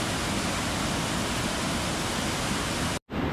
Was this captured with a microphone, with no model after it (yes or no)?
yes